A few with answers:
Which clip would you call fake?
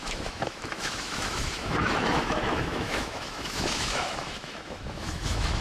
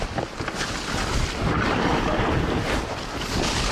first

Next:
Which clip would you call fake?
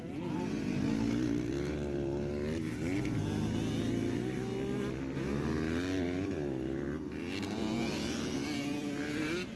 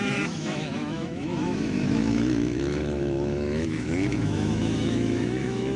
second